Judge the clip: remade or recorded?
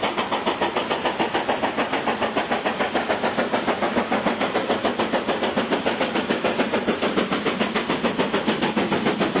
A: recorded